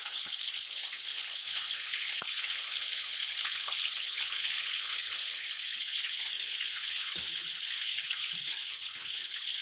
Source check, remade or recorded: remade